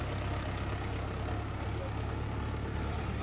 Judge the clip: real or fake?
real